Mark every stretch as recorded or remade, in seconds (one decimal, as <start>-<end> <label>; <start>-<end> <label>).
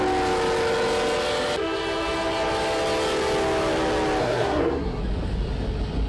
0.0-4.2 recorded; 4.2-5.0 remade; 5.0-6.1 recorded